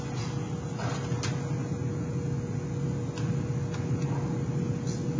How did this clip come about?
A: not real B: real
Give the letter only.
B